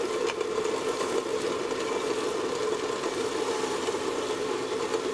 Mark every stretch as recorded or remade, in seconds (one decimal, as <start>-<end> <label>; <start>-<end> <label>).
0.0-5.1 recorded